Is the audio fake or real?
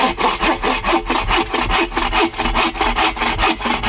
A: real